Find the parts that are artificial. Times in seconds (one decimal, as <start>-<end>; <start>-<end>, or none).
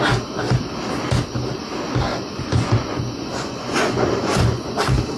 2.1-4.8